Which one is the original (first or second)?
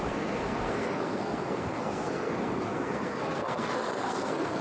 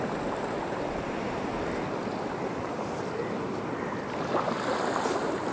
second